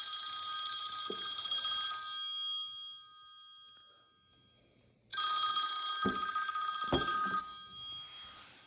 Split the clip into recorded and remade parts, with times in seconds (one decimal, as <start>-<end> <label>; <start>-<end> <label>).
0.0-8.7 recorded

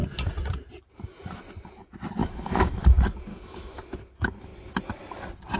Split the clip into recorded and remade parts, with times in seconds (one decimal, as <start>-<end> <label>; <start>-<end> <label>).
0.0-2.2 recorded; 2.2-2.8 remade; 2.8-3.3 recorded; 3.3-3.8 remade; 3.8-5.6 recorded

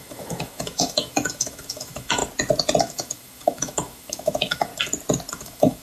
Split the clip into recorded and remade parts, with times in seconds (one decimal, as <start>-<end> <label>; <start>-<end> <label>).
0.0-2.2 remade; 2.2-2.8 recorded; 2.8-4.7 remade; 4.7-5.3 recorded; 5.3-5.8 remade

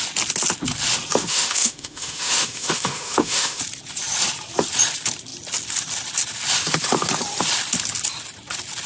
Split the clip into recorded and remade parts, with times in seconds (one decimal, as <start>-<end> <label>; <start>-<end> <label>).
0.0-1.2 recorded; 1.2-3.6 remade; 3.6-8.9 recorded

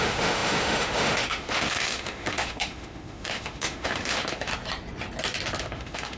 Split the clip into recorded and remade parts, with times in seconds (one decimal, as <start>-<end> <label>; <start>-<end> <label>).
0.0-4.5 remade; 4.5-5.6 recorded; 5.6-6.2 remade

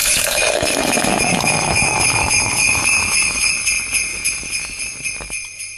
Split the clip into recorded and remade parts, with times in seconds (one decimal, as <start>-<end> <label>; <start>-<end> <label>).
0.0-3.5 remade; 3.5-4.1 recorded; 4.1-4.8 remade; 4.8-5.8 recorded